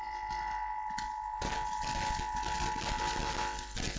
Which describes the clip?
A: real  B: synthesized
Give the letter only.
A